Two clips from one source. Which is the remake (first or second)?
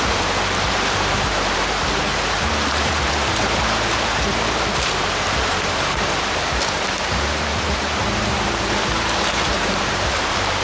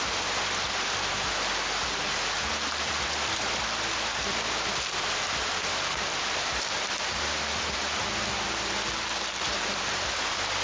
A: first